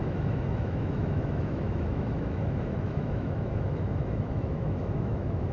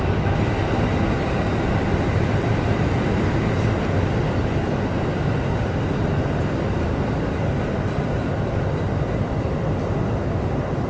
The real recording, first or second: second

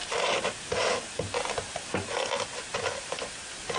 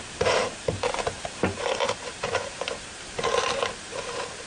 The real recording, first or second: first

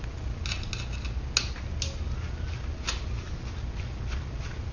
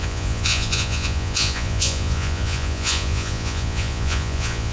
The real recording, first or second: first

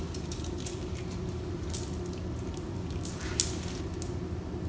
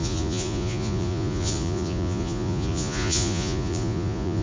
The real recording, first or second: first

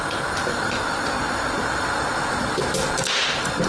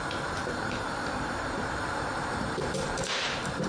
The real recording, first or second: first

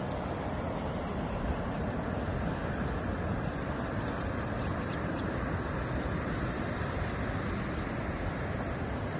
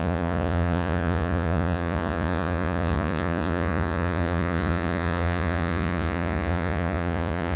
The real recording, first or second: first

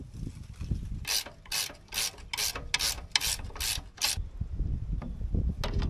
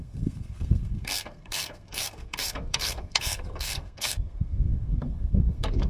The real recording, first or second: first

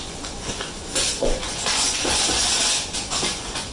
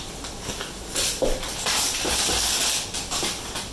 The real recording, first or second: second